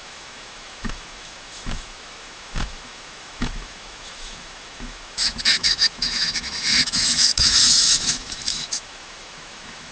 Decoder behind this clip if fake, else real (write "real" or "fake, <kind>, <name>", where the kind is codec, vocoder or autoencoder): fake, autoencoder, DAC-VAE